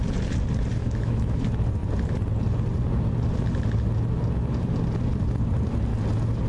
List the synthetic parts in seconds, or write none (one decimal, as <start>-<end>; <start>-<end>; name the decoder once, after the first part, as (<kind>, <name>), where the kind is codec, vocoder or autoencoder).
0.8-1.4 (autoencoder, DAC-VAE)